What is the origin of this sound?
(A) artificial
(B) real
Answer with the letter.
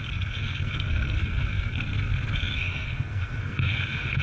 A